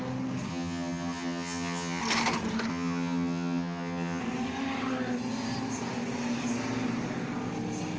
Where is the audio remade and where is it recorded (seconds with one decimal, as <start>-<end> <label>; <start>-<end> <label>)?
0.0-0.5 recorded; 0.5-2.0 remade; 2.0-2.7 recorded; 2.7-4.2 remade; 4.2-8.0 recorded